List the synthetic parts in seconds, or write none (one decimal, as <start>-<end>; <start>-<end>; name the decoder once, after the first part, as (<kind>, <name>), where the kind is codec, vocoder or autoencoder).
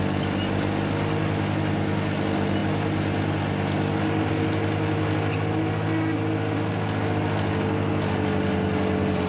none